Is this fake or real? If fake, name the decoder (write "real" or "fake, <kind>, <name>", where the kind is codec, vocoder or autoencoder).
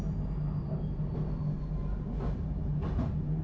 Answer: real